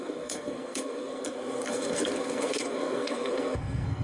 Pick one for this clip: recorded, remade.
remade